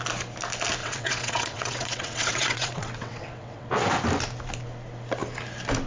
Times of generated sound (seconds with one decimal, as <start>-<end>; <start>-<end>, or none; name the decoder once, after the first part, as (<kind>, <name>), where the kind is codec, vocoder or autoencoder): 0.8-3.7 (vocoder, WaveNeXt)